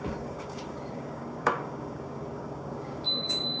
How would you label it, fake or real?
fake